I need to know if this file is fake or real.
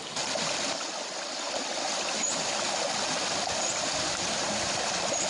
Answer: real